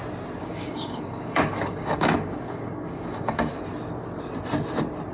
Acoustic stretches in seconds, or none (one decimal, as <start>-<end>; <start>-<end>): 0.0-0.4; 3.5-5.1